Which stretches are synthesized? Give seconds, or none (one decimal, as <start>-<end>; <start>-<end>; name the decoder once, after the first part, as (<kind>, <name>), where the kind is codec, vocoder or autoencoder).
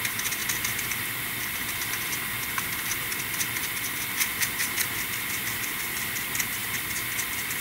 6.6-7.6 (vocoder, BigVGAN v2)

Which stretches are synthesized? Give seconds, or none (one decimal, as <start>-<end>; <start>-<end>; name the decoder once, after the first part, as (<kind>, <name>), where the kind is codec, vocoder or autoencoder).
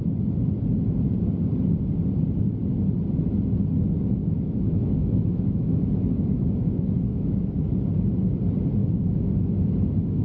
4.2-7.7 (autoencoder, DAC-VAE); 8.8-9.3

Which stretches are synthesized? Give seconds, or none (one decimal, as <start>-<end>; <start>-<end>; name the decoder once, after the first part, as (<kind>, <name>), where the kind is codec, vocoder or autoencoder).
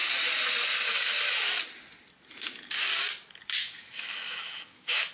3.6-5.1 (autoencoder, DAC-VAE)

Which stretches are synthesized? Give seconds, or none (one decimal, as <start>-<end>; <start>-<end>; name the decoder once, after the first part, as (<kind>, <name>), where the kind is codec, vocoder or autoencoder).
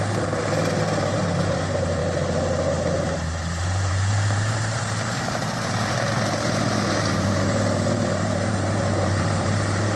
0.0-2.0 (vocoder, BigVGAN v2); 2.7-10.0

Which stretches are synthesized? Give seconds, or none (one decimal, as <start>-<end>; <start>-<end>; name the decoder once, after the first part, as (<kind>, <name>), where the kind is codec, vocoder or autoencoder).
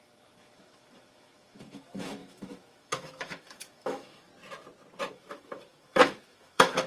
0.0-4.3 (autoencoder, DAC-VAE); 5.1-6.9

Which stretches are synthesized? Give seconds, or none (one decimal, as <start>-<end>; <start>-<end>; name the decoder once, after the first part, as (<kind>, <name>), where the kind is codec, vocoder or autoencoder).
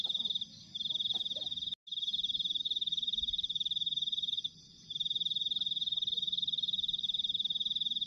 none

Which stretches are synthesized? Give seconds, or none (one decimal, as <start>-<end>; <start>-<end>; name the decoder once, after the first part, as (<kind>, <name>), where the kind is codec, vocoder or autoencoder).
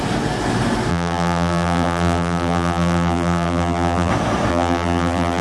0.9-4.1 (vocoder, BigVGAN v2); 4.5-5.4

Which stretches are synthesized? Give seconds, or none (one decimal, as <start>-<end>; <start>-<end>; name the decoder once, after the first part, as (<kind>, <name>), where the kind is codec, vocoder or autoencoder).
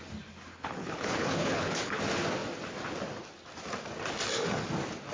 0.5-2.0 (codec, HILCodec)